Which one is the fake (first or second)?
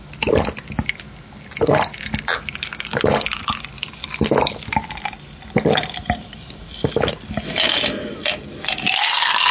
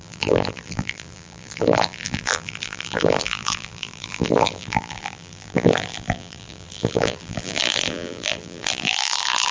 second